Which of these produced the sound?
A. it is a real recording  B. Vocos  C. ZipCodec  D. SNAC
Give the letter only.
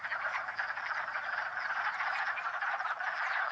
A